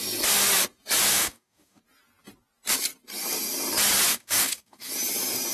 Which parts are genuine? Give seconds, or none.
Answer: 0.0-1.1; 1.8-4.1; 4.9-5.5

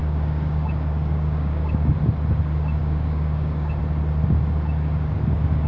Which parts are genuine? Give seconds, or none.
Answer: 1.9-2.8; 3.8-5.7

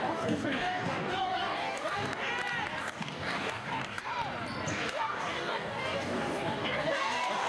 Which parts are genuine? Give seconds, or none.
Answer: 2.3-2.8; 4.1-4.7